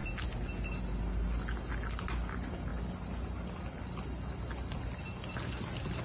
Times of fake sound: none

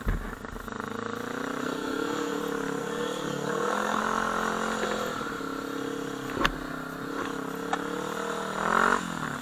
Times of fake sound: 1.6-2.4 (codec, SNAC); 2.8-4.0

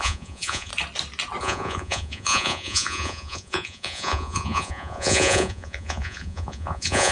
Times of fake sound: 0.0-0.7 (vocoder, Vocos); 1.4-7.1

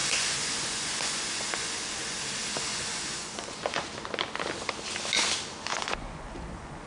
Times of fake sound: 0.0-2.2 (vocoder, Vocos); 2.7-3.8; 5.7-6.9

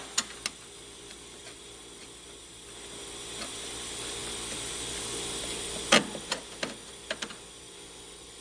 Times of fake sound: 1.1-2.5 (vocoder, BigVGAN v2)

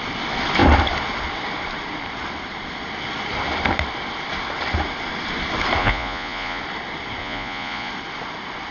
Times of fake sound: 5.8-6.6 (vocoder, Vocos); 7.2-7.9

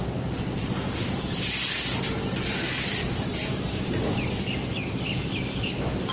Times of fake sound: 3.0-4.1 (vocoder, BigVGAN v2)

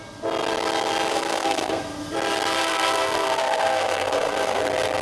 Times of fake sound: 1.1-1.8 (codec, SNAC); 2.6-4.6